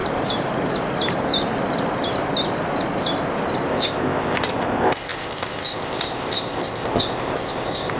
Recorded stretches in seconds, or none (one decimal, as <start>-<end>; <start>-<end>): 0.0-3.7